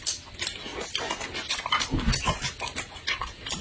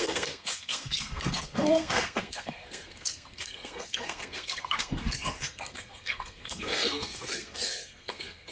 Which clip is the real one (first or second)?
first